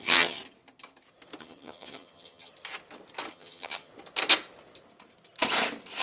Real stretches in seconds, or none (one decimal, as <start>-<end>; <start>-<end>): 0.4-1.4; 2.5-3.3; 3.9-6.0